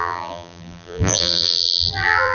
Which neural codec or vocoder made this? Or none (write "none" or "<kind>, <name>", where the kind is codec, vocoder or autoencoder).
vocoder, BigVGAN v2